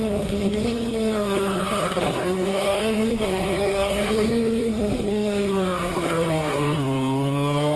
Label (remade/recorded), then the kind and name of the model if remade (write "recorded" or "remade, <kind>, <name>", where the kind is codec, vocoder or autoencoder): remade, codec, SNAC